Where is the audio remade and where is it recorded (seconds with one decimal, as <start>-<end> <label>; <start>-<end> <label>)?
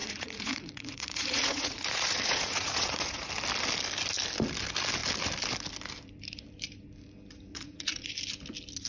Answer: 0.0-3.3 remade; 3.3-7.5 recorded; 7.5-8.1 remade; 8.1-8.9 recorded